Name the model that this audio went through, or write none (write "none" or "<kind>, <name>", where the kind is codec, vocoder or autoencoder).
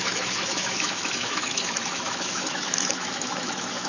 autoencoder, DAC-VAE